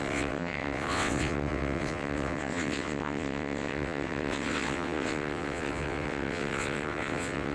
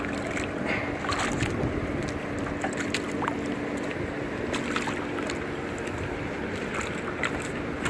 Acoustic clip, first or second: second